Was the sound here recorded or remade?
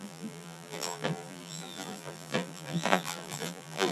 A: remade